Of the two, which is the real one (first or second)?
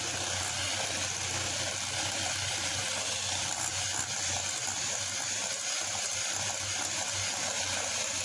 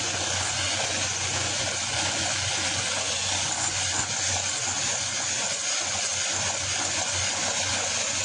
first